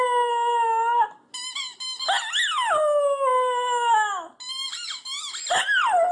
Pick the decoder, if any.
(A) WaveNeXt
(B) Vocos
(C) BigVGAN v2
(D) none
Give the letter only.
D